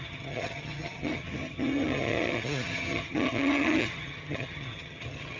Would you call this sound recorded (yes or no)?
no